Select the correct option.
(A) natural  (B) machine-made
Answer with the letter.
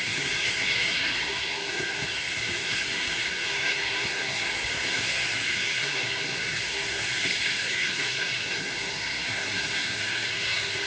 B